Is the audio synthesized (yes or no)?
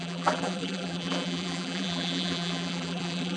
yes